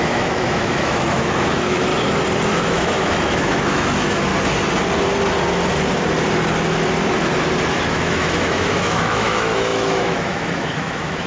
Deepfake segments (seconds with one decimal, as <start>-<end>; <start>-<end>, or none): 0.0-1.9; 2.5-4.3; 7.9-11.3